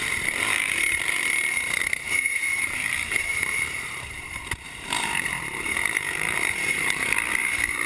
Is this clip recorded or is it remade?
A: remade